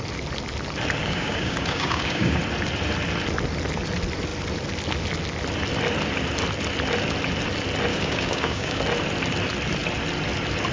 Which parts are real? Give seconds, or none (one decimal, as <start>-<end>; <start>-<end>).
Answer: 0.0-1.0; 2.4-7.9; 8.8-10.7